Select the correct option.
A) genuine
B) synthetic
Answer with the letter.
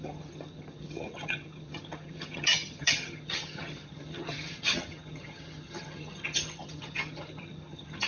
B